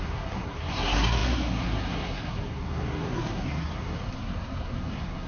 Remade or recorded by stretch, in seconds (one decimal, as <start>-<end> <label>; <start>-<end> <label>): 0.0-5.3 remade